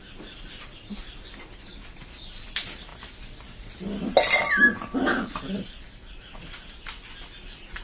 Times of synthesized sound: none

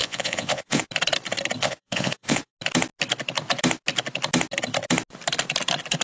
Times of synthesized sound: 0.0-0.8 (vocoder, Vocos); 1.6-2.5

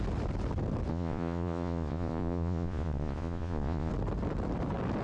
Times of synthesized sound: 0.9-3.9 (vocoder, Vocos)

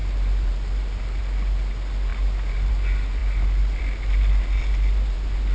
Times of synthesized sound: none

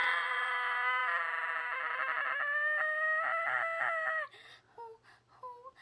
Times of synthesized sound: 0.0-0.5 (vocoder, Vocos)